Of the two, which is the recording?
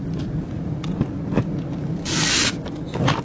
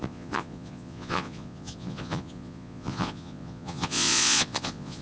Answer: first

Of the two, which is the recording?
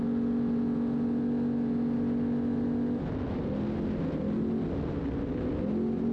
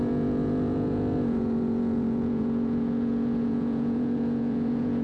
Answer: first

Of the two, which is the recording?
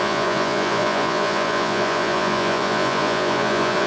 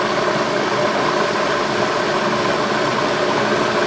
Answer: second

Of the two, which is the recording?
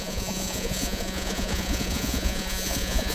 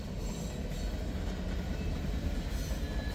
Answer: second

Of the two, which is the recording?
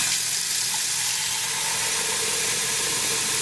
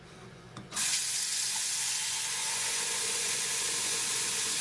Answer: first